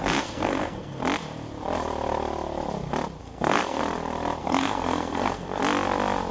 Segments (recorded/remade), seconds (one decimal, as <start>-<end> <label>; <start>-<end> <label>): 0.0-1.0 remade; 1.0-3.2 recorded; 3.2-3.8 remade; 3.8-4.4 recorded; 4.4-5.6 remade; 5.6-6.3 recorded